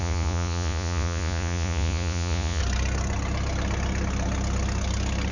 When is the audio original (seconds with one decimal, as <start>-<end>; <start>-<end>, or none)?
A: 2.6-5.3